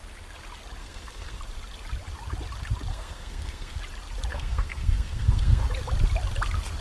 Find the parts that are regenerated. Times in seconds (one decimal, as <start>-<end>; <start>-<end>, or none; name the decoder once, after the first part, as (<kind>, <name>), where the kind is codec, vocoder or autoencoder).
0.8-1.4 (codec, SNAC); 2.9-3.8; 4.3-5.6